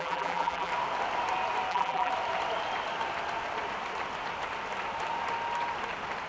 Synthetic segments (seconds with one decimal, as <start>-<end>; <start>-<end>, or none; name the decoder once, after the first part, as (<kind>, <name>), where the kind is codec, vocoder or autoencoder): 0.0-0.7 (vocoder, BigVGAN v2); 1.7-2.1